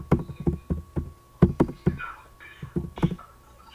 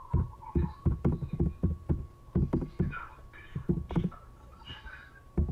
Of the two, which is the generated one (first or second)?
second